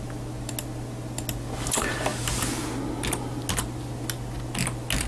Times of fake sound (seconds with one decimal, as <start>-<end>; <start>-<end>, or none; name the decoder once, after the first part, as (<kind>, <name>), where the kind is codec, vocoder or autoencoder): none